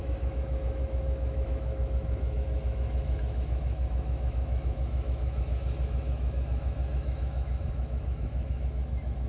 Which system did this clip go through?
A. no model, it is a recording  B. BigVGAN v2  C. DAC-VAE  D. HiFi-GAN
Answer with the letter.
C